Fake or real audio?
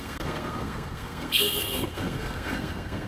fake